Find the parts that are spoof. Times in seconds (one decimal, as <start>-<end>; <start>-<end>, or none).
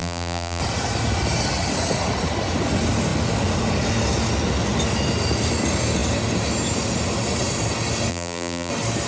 0.0-0.6; 8.1-8.7